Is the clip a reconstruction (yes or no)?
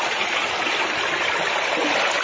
no